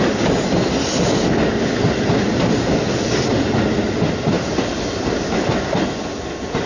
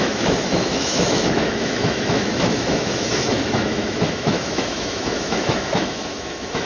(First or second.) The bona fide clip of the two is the first